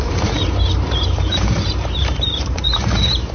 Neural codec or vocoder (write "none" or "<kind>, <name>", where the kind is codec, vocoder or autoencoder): vocoder, BigVGAN v2